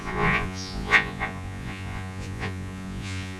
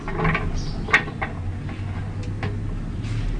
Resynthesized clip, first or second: first